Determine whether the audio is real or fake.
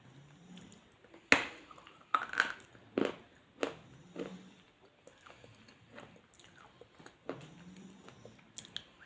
real